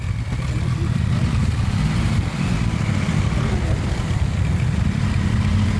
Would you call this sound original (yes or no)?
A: yes